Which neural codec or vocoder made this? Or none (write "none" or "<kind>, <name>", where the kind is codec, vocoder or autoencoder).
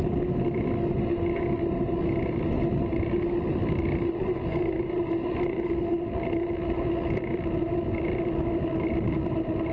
none